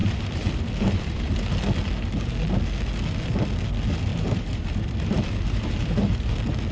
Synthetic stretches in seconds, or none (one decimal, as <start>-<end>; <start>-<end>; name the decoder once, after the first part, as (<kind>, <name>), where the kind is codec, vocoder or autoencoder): 0.0-1.3 (vocoder, BigVGAN v2); 4.1-6.3